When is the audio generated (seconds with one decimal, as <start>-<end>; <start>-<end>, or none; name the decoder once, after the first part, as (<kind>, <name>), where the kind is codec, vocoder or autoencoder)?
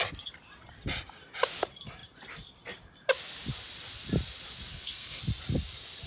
4.7-5.2 (codec, SNAC)